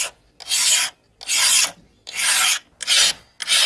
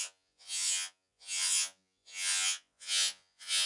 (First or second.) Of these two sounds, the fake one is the second